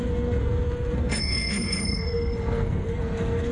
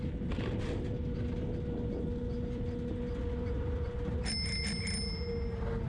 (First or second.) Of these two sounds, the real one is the second